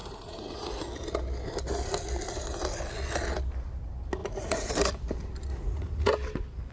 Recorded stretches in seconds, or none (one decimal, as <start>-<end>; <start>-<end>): 0.8-4.2; 4.7-5.5; 6.1-6.7

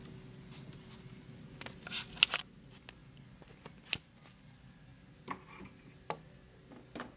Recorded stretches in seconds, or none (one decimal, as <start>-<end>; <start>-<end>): 0.0-7.2

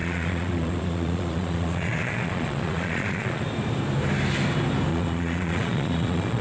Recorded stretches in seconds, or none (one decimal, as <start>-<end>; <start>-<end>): 3.4-4.9

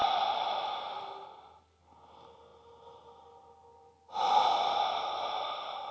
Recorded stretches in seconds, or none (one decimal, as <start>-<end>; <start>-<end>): 0.0-5.9

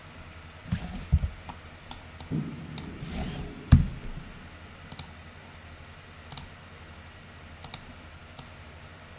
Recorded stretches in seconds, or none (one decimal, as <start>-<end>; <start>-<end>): 0.0-9.2

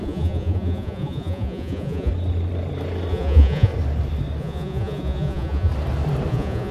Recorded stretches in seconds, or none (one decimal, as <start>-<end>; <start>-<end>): 2.1-3.1; 3.7-4.4; 5.7-6.3